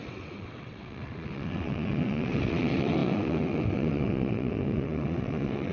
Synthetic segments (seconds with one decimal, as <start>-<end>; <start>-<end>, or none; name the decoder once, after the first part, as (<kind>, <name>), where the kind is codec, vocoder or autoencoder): 0.0-5.7 (vocoder, WaveNeXt)